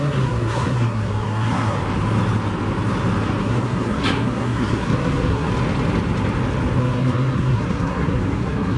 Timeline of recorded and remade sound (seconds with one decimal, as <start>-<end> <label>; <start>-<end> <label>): 0.0-1.8 remade; 1.8-3.4 recorded; 3.4-5.5 remade; 5.5-6.8 recorded; 6.8-8.8 remade